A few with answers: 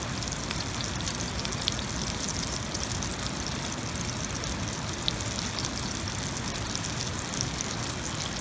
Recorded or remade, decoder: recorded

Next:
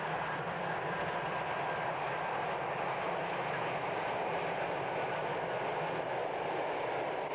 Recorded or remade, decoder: recorded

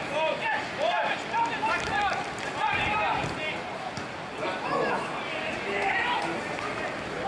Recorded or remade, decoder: recorded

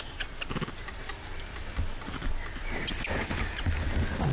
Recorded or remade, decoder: recorded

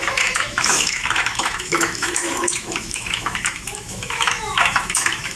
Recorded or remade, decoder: remade, autoencoder, DAC-VAE